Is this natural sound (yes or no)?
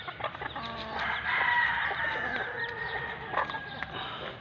yes